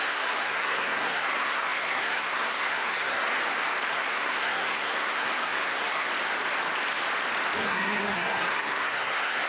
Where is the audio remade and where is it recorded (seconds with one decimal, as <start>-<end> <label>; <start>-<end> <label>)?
0.0-3.3 remade; 3.3-3.9 recorded; 3.9-6.1 remade; 6.1-7.6 recorded; 7.6-9.5 remade